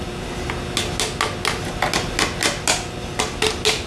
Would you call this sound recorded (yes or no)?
yes